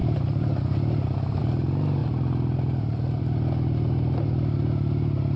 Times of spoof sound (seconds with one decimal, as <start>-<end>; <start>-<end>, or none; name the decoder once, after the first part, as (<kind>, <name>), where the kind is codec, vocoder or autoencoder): 0.0-1.4 (vocoder, BigVGAN v2); 2.0-3.2